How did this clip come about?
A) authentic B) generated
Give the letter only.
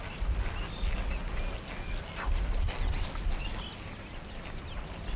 A